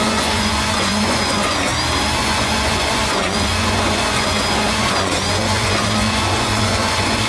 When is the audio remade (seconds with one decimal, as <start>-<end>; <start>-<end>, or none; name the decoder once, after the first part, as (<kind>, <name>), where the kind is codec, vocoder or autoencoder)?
0.0-1.7 (vocoder, Vocos); 2.2-7.3